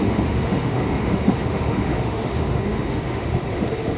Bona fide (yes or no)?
no